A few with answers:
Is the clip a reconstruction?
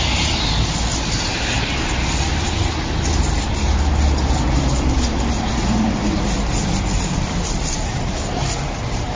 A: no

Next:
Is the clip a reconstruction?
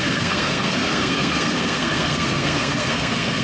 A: yes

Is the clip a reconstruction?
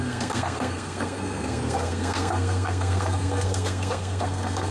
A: yes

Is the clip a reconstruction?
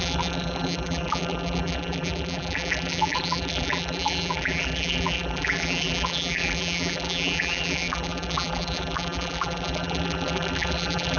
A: yes